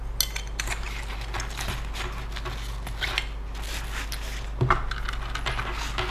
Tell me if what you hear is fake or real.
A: real